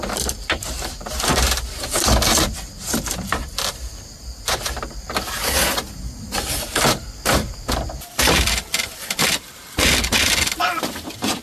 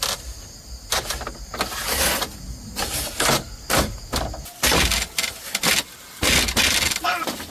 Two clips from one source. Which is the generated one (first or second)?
first